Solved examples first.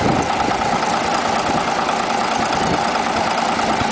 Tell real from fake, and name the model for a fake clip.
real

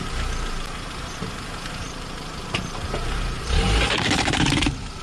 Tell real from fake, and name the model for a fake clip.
fake, vocoder, BigVGAN v2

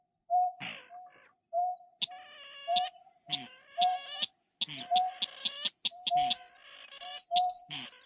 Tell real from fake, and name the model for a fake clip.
real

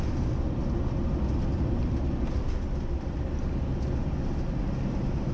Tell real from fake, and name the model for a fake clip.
real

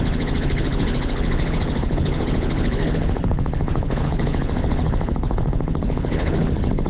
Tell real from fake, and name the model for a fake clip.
fake, codec, HILCodec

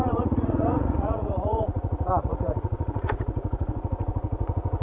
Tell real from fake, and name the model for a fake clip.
fake, vocoder, Vocos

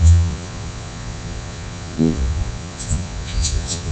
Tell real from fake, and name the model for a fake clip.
fake, vocoder, Vocos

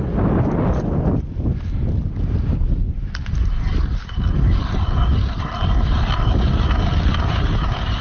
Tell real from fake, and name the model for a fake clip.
real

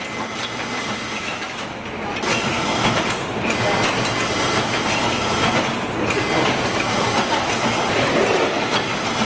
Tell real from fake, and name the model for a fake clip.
real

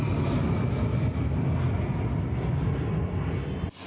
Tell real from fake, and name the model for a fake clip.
real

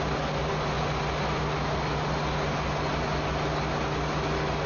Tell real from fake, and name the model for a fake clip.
real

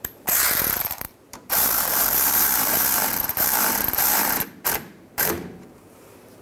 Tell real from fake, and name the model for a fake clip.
fake, vocoder, BigVGAN v2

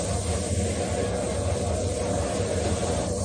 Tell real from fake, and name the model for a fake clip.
real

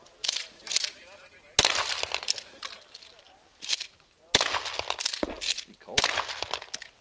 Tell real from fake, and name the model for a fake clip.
real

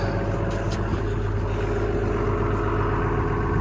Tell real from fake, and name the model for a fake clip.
real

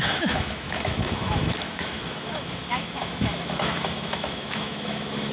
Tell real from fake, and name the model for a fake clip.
fake, autoencoder, DAC-VAE